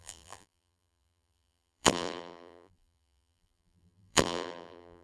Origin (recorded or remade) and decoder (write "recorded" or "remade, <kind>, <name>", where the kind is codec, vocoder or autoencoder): remade, vocoder, BigVGAN v2